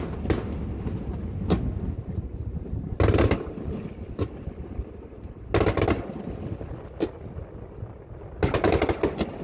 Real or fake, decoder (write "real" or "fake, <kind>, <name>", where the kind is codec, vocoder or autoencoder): real